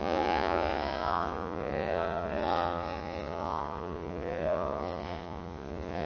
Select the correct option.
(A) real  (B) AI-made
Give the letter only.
B